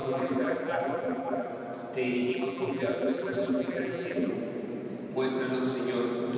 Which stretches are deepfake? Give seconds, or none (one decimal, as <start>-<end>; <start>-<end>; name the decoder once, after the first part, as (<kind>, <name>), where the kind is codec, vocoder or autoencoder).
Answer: 0.0-1.5 (vocoder, BigVGAN v2); 2.3-4.3